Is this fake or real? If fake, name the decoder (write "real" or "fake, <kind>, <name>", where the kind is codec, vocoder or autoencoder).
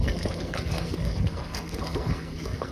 fake, codec, SNAC